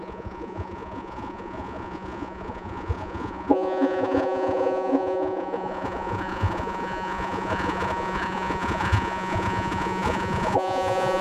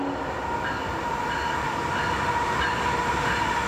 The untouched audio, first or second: second